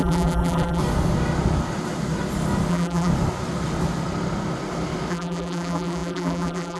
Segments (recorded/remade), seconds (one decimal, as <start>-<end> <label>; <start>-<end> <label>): 0.0-0.8 remade; 0.8-2.7 recorded; 2.7-3.1 remade; 3.1-5.1 recorded; 5.1-6.8 remade